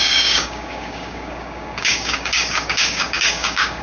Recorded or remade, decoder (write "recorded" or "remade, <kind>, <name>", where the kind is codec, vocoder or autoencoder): remade, codec, DAC